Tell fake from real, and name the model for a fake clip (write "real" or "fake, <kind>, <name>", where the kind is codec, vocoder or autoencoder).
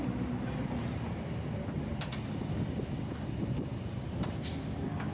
real